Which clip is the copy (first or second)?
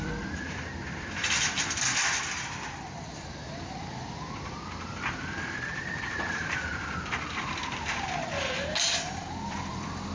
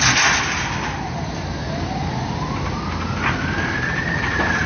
first